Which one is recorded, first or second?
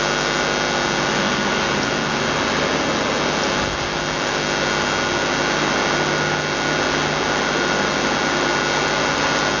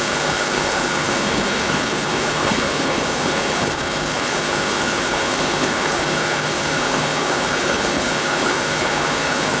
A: first